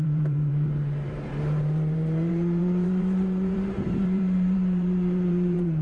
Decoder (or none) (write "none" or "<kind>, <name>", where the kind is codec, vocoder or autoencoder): vocoder, BigVGAN v2